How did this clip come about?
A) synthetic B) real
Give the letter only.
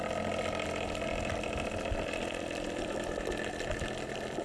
B